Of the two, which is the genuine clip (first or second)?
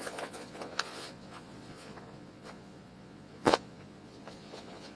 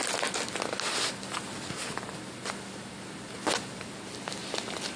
second